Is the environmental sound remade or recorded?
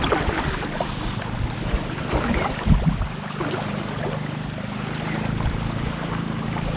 recorded